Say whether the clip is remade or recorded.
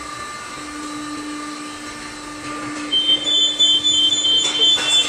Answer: recorded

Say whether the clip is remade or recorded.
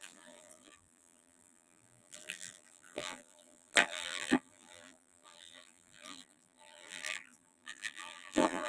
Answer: remade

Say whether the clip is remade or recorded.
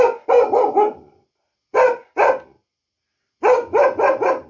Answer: recorded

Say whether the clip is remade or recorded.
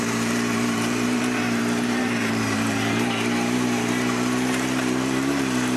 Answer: remade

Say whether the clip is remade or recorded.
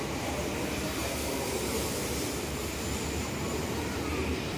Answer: remade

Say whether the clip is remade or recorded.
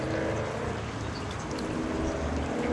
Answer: recorded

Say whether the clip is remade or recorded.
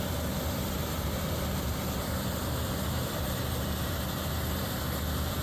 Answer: remade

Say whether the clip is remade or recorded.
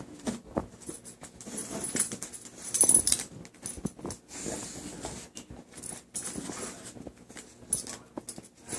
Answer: recorded